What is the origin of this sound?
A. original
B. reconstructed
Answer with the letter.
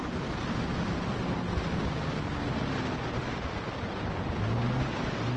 A